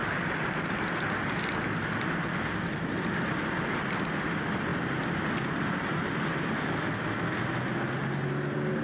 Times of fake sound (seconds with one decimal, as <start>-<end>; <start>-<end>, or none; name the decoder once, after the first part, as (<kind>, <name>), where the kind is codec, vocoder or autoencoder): none

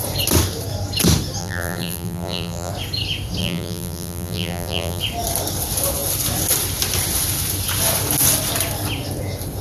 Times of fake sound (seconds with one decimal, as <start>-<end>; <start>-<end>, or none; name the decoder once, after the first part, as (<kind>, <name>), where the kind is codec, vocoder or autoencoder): 1.4-2.7 (vocoder, BigVGAN v2); 3.4-5.0

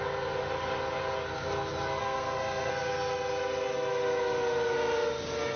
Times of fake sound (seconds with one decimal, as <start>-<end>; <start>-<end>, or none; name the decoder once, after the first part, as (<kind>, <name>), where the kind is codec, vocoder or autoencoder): 2.0-2.7 (codec, SNAC)